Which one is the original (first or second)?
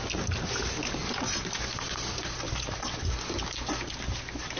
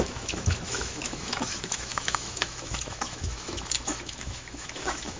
first